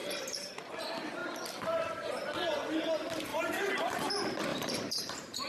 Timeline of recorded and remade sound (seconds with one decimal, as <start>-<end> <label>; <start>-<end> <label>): 0.0-0.5 remade; 0.5-3.3 recorded; 3.3-4.1 remade; 4.1-4.5 recorded; 4.5-5.5 remade